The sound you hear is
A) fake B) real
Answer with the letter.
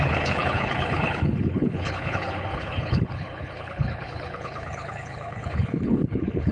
A